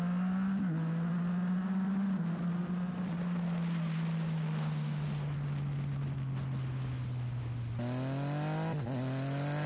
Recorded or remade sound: recorded